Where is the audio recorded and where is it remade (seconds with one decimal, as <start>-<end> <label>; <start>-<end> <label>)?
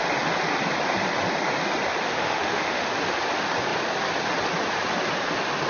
0.0-2.1 recorded; 2.1-2.9 remade; 2.9-5.7 recorded